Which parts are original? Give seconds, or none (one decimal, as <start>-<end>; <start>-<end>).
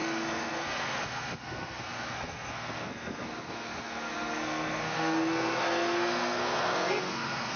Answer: none